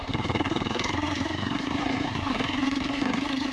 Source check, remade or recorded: remade